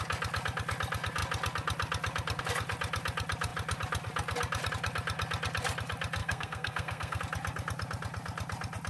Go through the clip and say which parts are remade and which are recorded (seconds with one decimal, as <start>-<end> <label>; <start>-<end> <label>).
0.0-6.2 recorded; 6.2-7.2 remade; 7.2-8.9 recorded